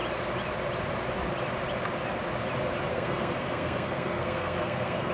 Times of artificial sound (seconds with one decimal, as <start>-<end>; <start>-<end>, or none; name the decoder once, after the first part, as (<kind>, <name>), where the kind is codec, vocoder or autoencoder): 2.9-5.1 (codec, SNAC)